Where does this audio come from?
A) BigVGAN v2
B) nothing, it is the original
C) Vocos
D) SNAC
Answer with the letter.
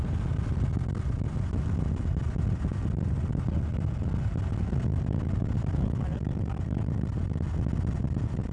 B